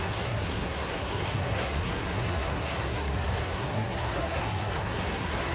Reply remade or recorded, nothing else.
remade